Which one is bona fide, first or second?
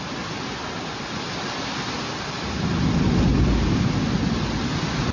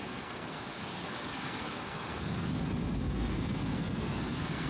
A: first